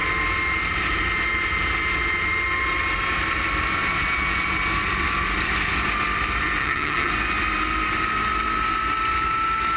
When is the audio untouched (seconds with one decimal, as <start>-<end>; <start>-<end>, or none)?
0.0-6.6; 7.1-9.8

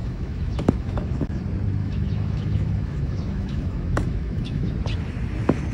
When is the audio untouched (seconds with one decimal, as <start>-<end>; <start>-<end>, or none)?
1.4-1.8; 4.7-5.7